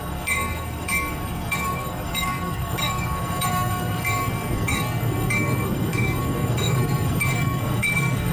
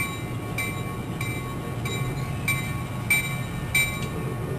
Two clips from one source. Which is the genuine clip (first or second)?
second